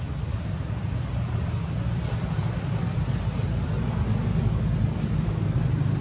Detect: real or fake real